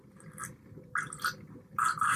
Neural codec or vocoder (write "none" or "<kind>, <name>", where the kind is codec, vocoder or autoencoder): vocoder, BigVGAN v2